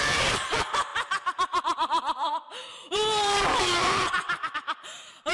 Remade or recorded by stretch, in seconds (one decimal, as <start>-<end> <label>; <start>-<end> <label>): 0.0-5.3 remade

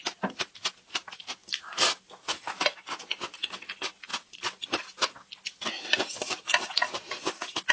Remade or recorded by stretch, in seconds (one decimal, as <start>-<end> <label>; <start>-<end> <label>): 0.0-1.4 recorded; 1.4-2.6 remade; 2.6-4.1 recorded; 4.1-4.7 remade; 4.7-7.7 recorded

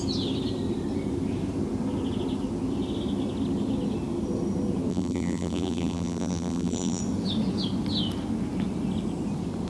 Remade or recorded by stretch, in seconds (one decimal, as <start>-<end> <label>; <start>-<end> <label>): 0.0-4.9 recorded; 4.9-7.0 remade; 7.0-9.7 recorded

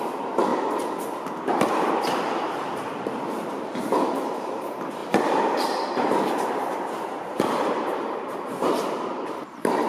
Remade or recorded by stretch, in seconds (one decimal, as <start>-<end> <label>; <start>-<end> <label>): 0.0-0.5 remade; 0.5-1.5 recorded; 1.5-9.9 remade

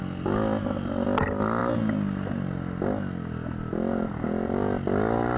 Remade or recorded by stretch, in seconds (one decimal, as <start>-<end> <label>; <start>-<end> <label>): 0.0-5.4 recorded

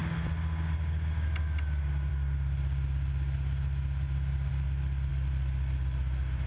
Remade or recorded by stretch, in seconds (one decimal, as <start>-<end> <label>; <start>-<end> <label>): 0.0-6.5 recorded

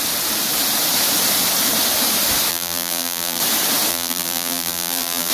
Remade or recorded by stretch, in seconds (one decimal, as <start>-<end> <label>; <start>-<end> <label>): 0.0-2.5 recorded; 2.5-3.4 remade; 3.4-3.9 recorded; 3.9-5.3 remade